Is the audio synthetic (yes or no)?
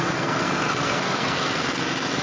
yes